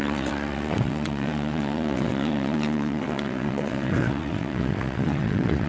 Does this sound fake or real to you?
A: fake